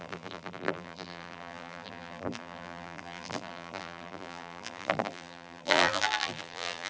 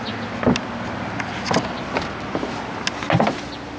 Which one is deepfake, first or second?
first